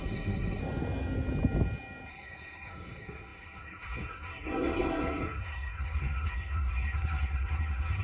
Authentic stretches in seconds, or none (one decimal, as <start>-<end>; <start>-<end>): 0.6-2.1